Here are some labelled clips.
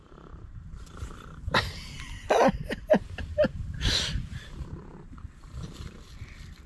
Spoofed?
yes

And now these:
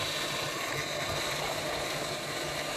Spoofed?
no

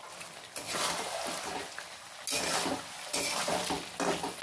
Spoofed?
no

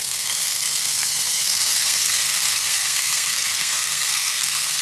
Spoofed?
yes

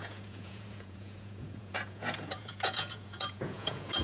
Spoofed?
yes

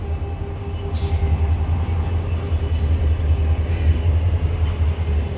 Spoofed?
no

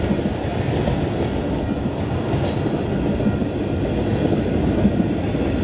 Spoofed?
no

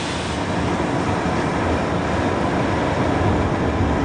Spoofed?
no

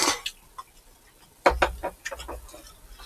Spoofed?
no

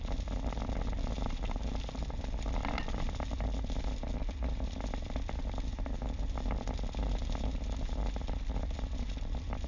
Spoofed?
no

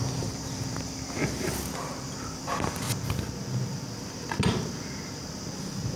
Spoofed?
no